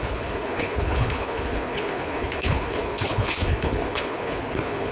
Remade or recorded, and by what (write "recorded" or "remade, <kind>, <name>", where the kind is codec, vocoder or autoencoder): remade, codec, HILCodec